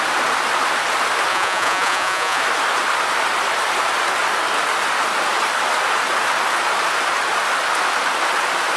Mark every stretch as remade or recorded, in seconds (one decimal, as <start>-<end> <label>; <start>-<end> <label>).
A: 0.0-1.3 recorded; 1.3-2.4 remade; 2.4-8.8 recorded